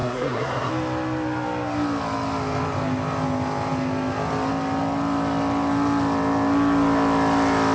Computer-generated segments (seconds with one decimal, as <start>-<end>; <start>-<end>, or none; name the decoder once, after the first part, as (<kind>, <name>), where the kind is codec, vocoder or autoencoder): 0.0-0.7 (codec, SNAC)